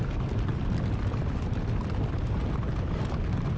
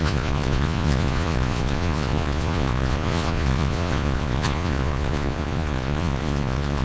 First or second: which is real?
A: first